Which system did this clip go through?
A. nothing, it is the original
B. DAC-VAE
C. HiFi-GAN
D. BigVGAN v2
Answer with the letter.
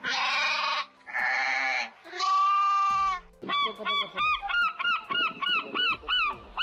A